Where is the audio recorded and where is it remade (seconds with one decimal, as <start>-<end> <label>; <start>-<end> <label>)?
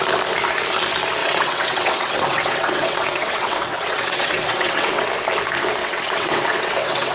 0.0-1.2 recorded; 1.2-5.1 remade; 5.1-5.8 recorded; 5.8-7.1 remade